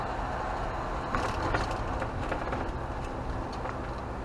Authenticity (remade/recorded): recorded